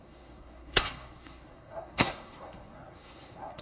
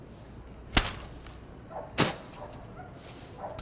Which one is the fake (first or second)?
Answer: first